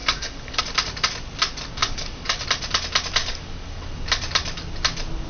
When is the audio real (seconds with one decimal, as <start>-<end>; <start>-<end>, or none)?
0.6-1.8; 2.4-3.2; 3.8-5.3